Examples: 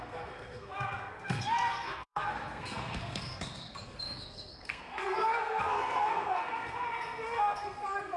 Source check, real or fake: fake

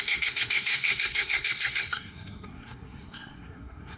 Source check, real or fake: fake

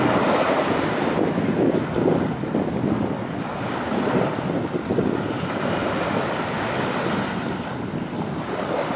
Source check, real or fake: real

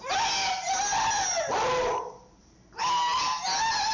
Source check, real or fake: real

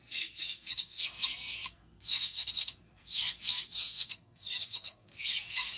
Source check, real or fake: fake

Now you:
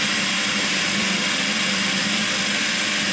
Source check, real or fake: real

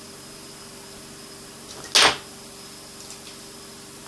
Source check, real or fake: real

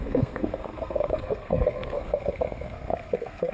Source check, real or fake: fake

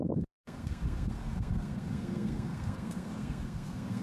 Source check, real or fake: fake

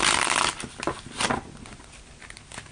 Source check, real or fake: real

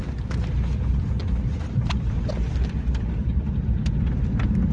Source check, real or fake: real